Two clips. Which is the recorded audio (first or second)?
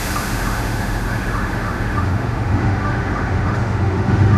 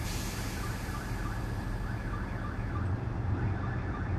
second